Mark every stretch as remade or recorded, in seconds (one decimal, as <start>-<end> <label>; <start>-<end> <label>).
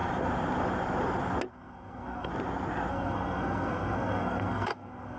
0.0-1.5 recorded; 1.5-2.3 remade; 2.3-2.9 recorded; 2.9-5.2 remade